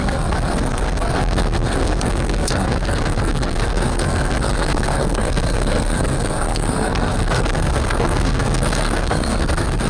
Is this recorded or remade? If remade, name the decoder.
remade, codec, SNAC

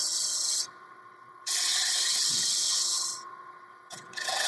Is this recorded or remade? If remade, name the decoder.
remade, vocoder, WaveNeXt